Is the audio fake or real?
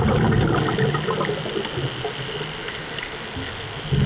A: real